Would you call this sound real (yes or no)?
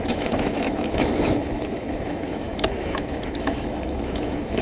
no